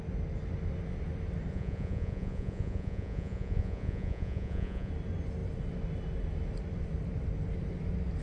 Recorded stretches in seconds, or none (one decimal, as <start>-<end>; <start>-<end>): 0.0-1.5; 4.9-8.2